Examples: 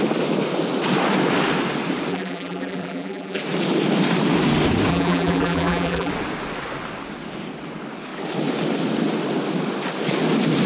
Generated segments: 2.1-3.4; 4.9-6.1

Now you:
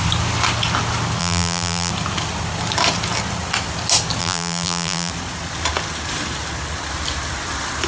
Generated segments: 1.2-1.9; 4.2-5.1